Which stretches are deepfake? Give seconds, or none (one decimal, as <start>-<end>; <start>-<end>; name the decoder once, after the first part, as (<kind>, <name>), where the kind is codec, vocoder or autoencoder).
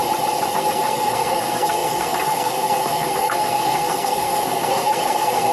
0.5-5.5 (codec, SNAC)